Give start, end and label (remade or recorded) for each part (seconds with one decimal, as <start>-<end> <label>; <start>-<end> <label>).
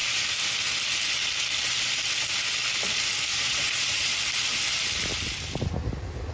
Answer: 0.0-3.3 recorded; 3.3-4.1 remade; 4.1-6.3 recorded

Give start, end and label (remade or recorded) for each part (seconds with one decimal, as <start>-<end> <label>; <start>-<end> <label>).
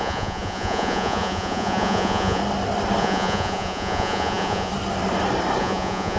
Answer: 0.0-2.4 remade; 2.4-3.0 recorded; 3.0-4.7 remade; 4.7-5.6 recorded; 5.6-6.2 remade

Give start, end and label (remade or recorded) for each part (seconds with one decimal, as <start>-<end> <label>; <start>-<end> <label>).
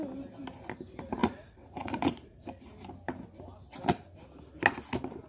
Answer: 0.0-1.2 recorded; 1.2-2.7 remade; 2.7-5.3 recorded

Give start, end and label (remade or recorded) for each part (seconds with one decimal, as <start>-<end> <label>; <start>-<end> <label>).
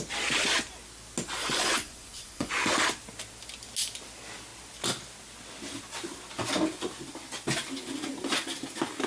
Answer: 0.0-1.4 recorded; 1.4-2.5 remade; 2.5-9.1 recorded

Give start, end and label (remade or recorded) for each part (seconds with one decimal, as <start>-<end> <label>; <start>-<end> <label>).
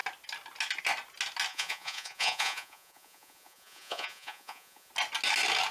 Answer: 0.0-1.5 recorded; 1.5-4.9 remade; 4.9-5.7 recorded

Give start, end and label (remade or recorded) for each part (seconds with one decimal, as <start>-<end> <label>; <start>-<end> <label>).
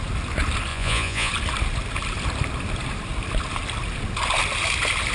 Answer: 0.0-0.7 recorded; 0.7-1.3 remade; 1.3-5.1 recorded